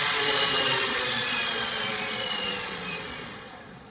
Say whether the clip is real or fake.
fake